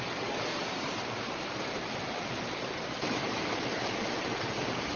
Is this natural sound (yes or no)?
no